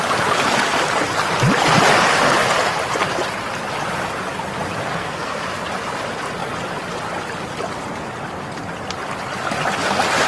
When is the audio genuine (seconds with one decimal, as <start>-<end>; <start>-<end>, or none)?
0.0-4.9; 5.4-10.3